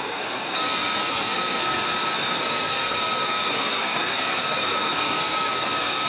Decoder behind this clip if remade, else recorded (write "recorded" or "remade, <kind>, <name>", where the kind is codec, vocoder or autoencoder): remade, codec, SNAC